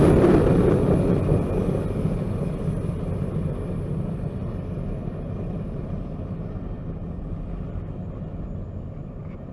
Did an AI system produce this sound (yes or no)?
no